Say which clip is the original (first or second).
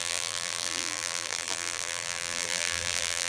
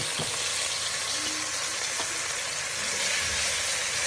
second